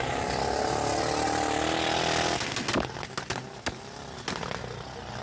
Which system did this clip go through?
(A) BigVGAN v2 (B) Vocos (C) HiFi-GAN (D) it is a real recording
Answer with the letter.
D